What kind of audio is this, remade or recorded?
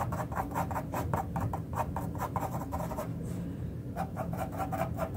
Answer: remade